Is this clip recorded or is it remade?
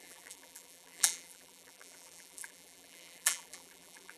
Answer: remade